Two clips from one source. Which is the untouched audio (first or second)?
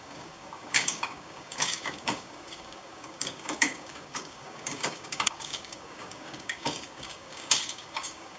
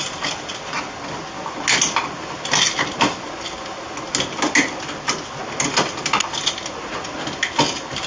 second